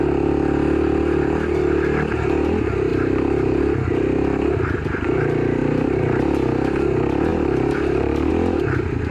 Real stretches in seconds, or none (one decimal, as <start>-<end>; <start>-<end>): 0.0-2.9; 3.6-5.6; 6.2-7.3; 8.3-9.1

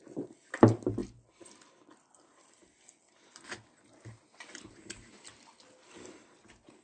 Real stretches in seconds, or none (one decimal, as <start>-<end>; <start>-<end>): 0.0-6.8

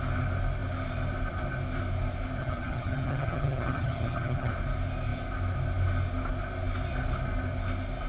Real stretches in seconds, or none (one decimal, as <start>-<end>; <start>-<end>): 0.0-2.4; 4.5-8.1

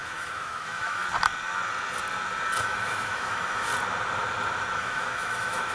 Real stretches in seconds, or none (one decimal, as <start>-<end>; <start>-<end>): 1.0-2.6; 3.7-4.8

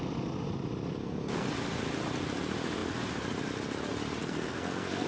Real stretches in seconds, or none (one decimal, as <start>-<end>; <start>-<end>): 0.0-1.0; 1.5-4.2

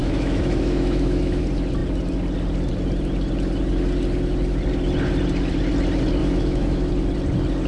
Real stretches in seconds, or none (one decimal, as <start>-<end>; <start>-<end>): 1.4-6.2; 6.9-7.7